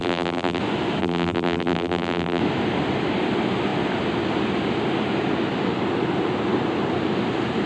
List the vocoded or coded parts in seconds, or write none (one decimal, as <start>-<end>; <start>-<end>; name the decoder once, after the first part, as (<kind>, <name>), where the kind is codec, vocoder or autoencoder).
0.0-0.6 (vocoder, BigVGAN v2); 1.0-2.4